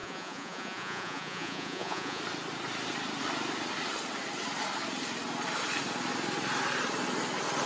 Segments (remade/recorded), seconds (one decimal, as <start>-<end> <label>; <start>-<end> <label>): 0.0-2.2 remade; 2.2-7.7 recorded